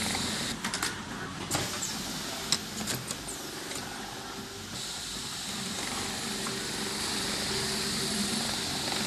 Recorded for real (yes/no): yes